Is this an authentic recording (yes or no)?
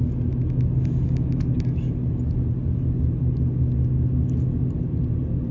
yes